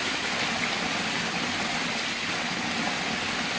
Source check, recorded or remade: recorded